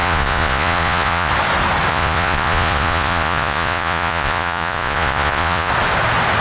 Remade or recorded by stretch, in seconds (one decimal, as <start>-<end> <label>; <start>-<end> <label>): 0.0-1.3 remade; 1.3-1.9 recorded; 1.9-5.7 remade; 5.7-6.4 recorded